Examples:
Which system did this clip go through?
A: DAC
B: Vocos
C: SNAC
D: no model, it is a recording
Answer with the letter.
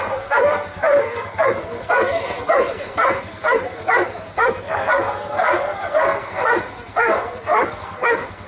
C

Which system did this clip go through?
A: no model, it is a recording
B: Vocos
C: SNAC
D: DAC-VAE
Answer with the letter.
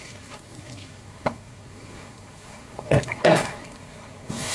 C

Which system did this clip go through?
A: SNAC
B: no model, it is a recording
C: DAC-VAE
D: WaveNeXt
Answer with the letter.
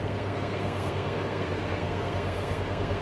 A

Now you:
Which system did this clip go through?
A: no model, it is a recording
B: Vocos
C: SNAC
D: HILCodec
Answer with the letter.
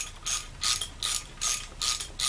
A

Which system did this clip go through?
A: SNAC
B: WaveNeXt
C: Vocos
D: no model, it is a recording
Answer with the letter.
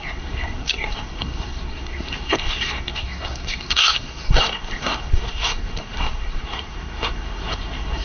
A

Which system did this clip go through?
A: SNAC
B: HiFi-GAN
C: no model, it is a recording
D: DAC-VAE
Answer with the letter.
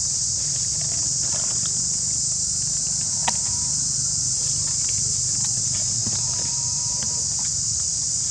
C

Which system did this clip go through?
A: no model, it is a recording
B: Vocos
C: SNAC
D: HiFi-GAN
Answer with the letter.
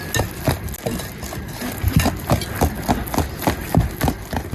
A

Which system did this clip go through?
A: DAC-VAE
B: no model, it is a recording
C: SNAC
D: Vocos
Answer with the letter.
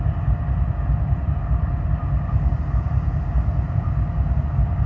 B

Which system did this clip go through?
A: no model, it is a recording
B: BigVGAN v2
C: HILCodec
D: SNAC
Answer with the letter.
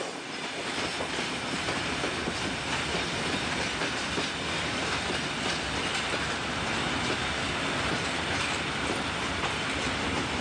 A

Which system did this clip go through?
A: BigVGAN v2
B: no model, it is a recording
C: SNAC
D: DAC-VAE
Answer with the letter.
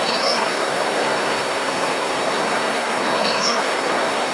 C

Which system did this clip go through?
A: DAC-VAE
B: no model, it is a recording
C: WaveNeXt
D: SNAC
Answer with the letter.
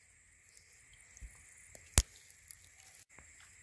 B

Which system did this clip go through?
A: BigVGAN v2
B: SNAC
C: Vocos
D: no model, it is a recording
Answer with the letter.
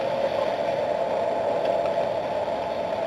D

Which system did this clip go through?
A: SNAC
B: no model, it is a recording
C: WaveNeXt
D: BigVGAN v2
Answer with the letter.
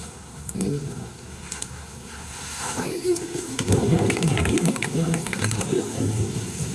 A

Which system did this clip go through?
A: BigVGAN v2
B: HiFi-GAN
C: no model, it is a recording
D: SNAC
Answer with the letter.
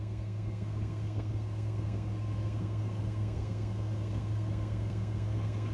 D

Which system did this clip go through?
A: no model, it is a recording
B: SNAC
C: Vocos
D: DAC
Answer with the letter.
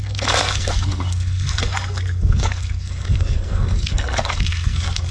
B